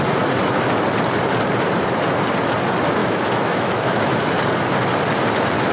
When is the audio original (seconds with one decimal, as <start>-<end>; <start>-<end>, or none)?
0.0-3.0; 4.2-5.7